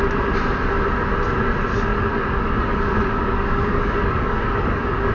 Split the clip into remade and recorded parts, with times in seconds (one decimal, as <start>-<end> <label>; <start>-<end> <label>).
0.0-1.9 recorded; 1.9-5.1 remade